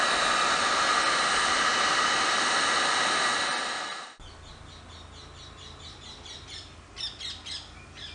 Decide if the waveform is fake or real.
real